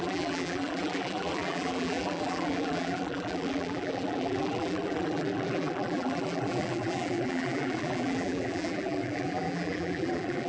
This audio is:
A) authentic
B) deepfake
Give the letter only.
B